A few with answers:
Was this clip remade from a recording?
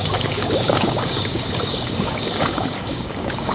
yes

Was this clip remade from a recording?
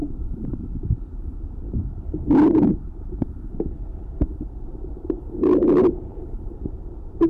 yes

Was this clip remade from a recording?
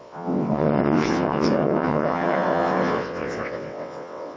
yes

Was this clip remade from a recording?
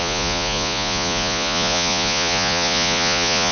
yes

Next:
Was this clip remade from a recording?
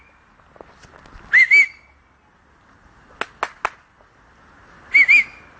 no